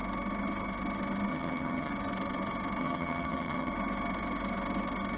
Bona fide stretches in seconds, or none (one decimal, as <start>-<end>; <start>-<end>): 0.0-1.3; 1.9-2.8; 3.7-5.2